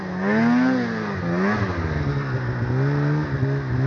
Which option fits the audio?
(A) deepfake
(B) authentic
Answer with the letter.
B